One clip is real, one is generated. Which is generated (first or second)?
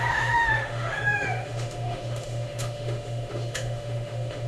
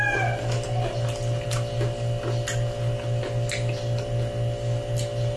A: first